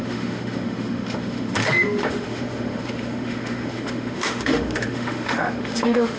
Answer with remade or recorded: remade